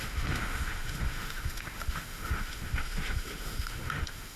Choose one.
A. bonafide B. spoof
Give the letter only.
B